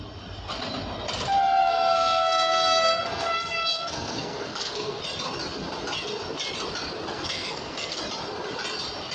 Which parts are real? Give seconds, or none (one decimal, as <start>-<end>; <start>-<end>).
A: 0.0-1.6; 5.0-7.1; 8.0-9.1